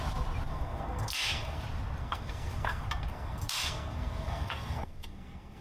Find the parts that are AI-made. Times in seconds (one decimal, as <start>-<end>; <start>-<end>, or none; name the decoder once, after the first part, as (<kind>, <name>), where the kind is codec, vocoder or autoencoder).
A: 0.5-1.6 (codec, SNAC); 2.0-5.6